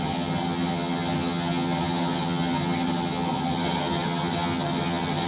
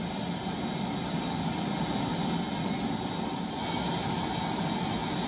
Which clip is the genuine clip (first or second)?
second